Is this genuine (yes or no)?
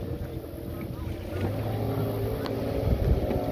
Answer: yes